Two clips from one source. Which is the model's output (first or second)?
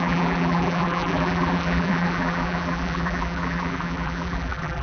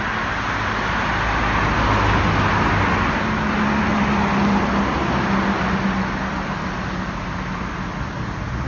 first